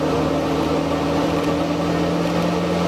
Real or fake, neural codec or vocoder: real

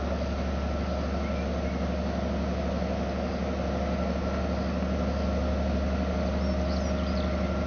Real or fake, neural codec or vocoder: real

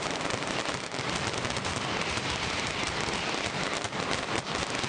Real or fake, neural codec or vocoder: real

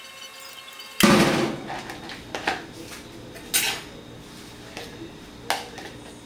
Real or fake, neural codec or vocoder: real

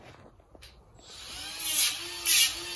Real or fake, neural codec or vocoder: real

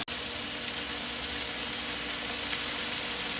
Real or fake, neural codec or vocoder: real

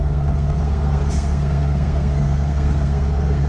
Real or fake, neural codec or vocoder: fake, codec, SNAC